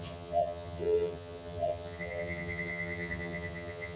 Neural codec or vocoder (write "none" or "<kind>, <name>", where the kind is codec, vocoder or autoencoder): vocoder, HiFi-GAN